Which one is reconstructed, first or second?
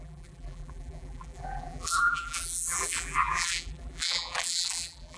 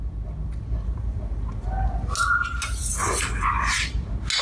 first